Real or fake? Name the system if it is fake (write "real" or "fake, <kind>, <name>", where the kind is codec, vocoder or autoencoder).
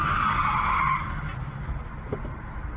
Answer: real